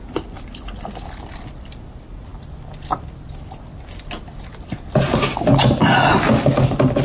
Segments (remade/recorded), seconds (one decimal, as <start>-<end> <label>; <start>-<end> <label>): 0.0-7.0 recorded